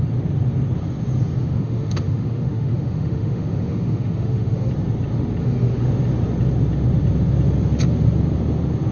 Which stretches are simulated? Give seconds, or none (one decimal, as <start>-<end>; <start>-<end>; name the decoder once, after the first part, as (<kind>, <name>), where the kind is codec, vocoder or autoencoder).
1.4-4.7 (autoencoder, DAC-VAE); 5.4-5.9

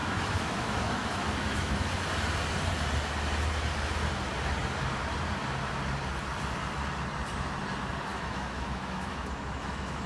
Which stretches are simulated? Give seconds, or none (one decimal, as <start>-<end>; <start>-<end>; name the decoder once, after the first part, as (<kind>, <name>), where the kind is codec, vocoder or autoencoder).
0.0-1.9 (autoencoder, DAC-VAE); 8.1-10.1

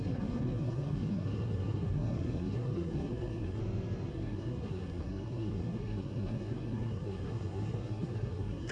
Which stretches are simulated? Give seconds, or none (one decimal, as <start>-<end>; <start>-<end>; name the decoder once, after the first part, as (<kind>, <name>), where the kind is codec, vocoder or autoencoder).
0.0-3.6 (codec, SNAC); 4.1-8.7

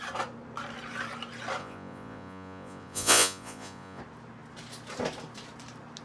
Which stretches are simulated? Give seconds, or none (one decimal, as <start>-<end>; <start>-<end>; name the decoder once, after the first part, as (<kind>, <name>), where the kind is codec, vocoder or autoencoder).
1.6-4.0 (vocoder, Vocos)

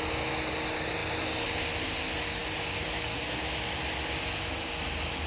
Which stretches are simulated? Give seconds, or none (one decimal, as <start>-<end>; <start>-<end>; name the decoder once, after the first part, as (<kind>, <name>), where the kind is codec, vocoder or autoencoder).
none

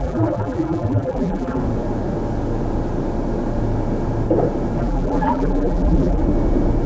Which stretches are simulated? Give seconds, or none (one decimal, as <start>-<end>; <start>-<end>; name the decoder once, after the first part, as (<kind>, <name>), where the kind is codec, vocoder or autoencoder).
0.0-1.6 (vocoder, BigVGAN v2); 4.8-6.2

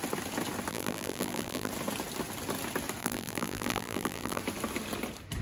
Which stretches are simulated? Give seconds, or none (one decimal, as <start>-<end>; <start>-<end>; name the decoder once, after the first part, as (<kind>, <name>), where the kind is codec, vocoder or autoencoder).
0.7-1.7 (vocoder, BigVGAN v2); 3.0-4.4